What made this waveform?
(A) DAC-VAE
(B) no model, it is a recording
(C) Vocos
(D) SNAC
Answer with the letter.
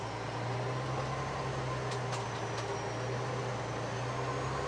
B